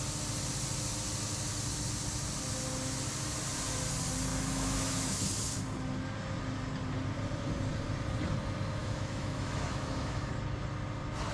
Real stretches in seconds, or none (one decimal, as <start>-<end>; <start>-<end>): 0.0-4.3; 5.2-8.8; 10.3-11.3